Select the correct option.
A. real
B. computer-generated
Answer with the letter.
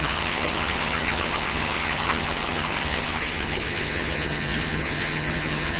B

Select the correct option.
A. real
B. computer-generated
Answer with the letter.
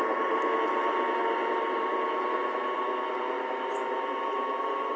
A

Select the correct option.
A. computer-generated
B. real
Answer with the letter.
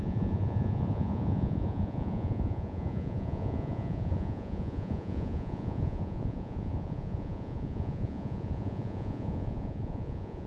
A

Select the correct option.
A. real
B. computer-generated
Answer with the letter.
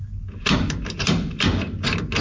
A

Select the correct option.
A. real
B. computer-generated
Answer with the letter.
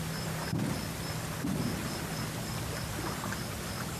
A